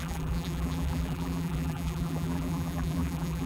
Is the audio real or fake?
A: fake